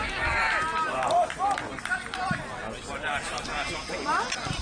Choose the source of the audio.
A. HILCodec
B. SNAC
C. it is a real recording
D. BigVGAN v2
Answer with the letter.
C